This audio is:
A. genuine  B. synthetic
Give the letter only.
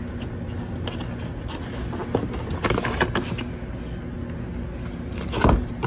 A